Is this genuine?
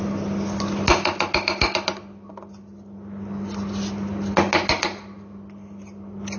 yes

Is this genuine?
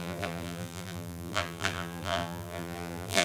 no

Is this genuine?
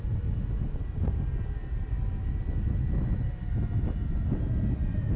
yes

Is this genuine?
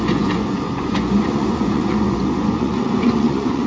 no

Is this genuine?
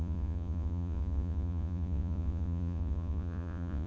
no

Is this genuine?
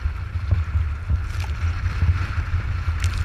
yes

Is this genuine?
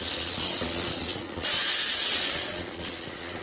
no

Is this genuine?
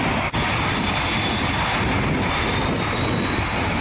yes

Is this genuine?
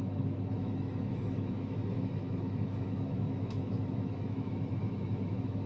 no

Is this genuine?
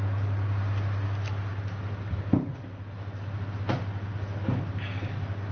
yes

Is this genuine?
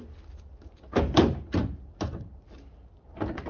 yes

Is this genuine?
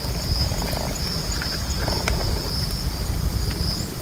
yes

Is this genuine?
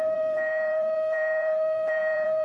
no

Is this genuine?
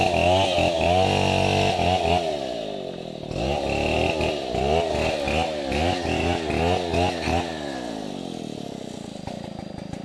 yes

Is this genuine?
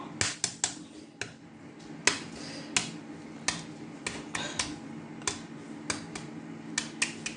yes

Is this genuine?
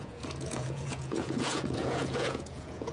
no